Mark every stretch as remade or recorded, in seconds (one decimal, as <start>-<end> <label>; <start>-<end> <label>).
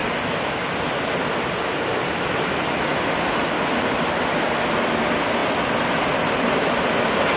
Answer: 0.0-7.4 recorded